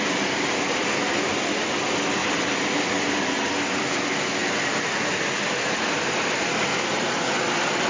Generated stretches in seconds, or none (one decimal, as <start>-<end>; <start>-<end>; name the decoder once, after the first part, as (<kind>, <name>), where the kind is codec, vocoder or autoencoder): 2.2-2.7 (vocoder, BigVGAN v2); 6.7-7.4